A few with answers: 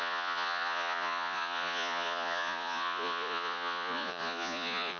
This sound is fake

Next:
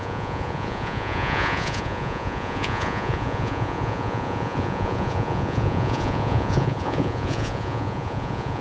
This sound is fake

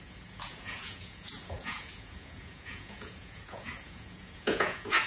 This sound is fake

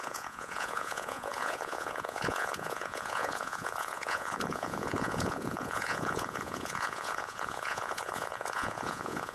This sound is fake